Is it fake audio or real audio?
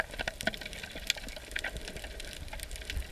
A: real